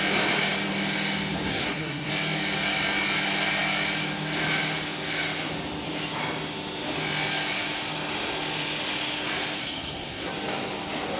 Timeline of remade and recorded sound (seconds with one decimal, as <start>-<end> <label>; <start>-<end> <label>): 0.0-1.5 recorded; 1.5-2.1 remade; 2.1-9.6 recorded; 9.6-10.3 remade; 10.3-11.2 recorded